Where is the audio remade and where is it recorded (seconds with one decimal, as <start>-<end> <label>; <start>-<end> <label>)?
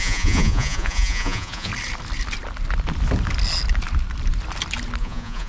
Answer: 0.0-1.7 remade; 1.7-5.0 recorded; 5.0-5.5 remade